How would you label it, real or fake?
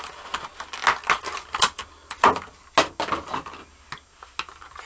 real